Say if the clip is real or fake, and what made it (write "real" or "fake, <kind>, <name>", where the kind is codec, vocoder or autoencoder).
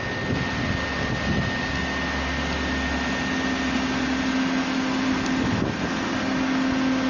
real